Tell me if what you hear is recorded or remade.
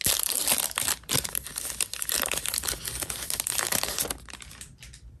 recorded